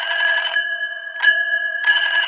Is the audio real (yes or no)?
no